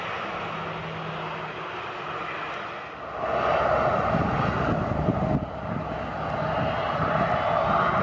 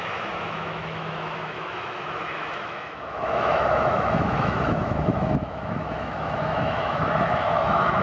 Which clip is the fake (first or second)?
second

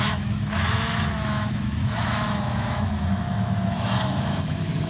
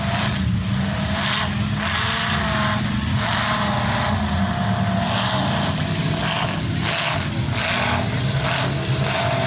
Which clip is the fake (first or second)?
first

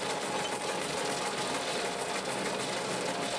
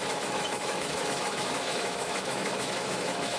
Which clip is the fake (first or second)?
second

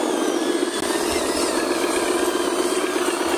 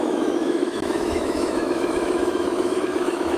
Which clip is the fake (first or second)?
second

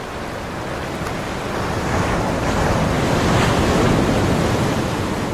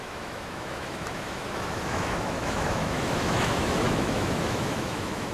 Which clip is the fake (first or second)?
second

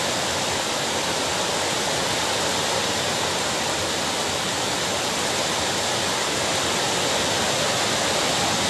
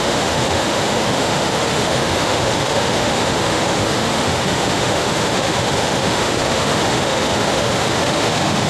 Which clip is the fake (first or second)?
second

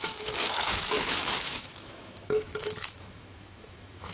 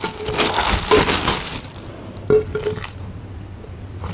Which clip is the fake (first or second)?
first